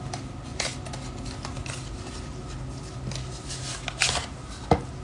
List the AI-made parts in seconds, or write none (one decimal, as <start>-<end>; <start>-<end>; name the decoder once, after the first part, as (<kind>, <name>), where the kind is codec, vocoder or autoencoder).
none